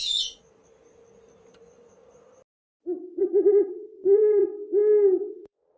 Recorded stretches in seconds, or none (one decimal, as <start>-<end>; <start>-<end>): 0.6-3.2; 4.4-5.3